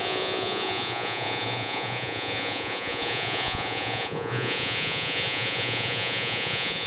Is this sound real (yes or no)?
no